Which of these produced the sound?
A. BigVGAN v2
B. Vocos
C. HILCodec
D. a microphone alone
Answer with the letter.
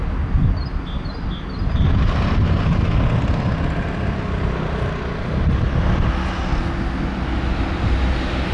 D